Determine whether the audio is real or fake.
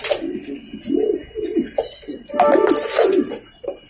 real